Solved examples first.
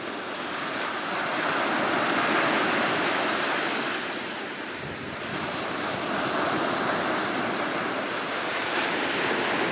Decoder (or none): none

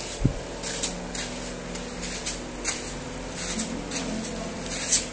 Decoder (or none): none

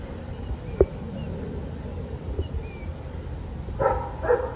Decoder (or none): none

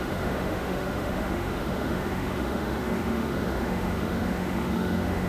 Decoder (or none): autoencoder, DAC-VAE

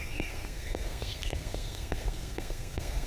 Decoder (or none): codec, SNAC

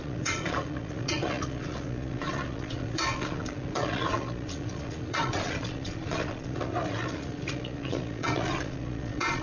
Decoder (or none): vocoder, Vocos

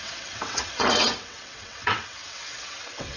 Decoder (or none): vocoder, WaveNeXt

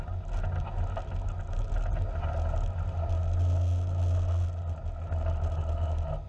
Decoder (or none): none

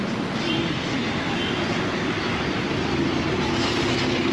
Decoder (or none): none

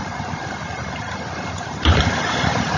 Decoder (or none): vocoder, BigVGAN v2